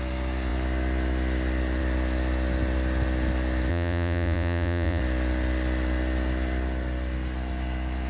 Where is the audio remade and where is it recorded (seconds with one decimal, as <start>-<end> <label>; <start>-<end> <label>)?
0.0-3.7 recorded; 3.7-5.0 remade; 5.0-8.1 recorded